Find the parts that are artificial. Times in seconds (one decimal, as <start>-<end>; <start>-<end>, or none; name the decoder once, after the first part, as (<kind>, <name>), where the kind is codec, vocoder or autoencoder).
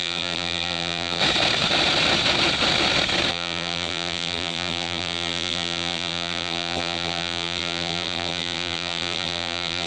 0.0-1.2 (vocoder, BigVGAN v2); 3.3-9.9